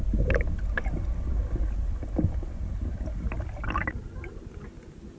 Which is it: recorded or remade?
recorded